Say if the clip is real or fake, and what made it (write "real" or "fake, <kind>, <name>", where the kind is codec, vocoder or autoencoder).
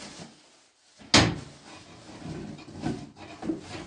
real